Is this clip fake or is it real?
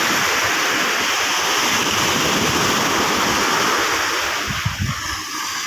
real